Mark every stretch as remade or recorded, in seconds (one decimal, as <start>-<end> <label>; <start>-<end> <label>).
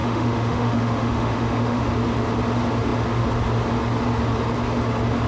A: 0.0-1.8 remade; 1.8-5.3 recorded